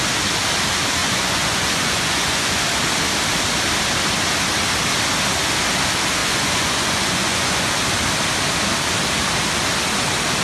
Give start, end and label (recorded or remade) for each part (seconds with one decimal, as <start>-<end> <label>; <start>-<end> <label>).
0.0-1.0 recorded; 1.0-2.6 remade; 2.6-6.2 recorded; 6.2-7.7 remade; 7.7-10.4 recorded